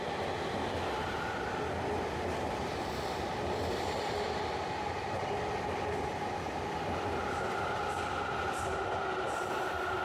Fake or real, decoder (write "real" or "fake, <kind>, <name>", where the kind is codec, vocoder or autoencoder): real